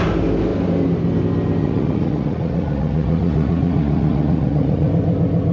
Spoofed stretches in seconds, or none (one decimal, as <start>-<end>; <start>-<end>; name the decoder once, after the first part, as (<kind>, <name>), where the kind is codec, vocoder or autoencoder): 1.6-4.9 (vocoder, Vocos)